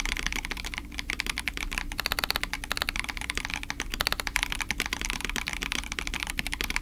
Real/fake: real